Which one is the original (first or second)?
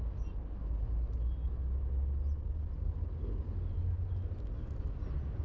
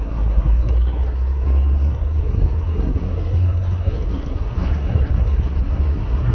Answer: first